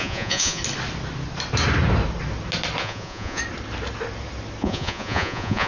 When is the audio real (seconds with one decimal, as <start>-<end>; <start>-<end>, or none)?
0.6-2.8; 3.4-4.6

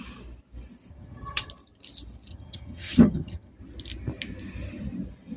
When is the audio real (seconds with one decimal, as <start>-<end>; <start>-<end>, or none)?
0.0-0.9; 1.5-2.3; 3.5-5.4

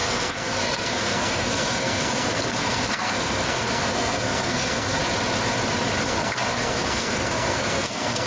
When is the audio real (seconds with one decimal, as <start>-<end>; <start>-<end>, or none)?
5.0-6.0